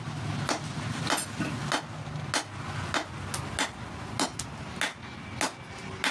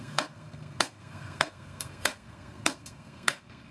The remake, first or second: second